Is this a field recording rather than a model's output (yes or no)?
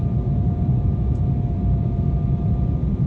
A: no